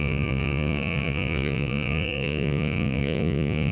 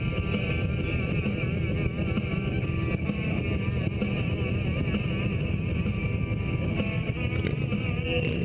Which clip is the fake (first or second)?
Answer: first